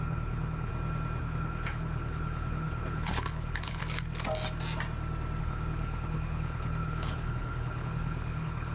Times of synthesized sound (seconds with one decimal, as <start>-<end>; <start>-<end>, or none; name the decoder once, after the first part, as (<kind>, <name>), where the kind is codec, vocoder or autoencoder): 0.0-0.7 (codec, HILCodec); 1.2-3.8; 5.4-8.7